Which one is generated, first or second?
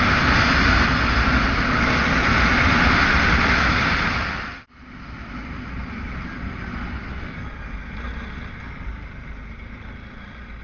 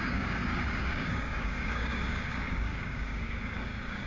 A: second